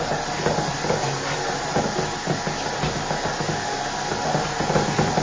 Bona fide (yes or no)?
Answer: yes